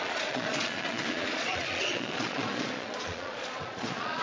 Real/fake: fake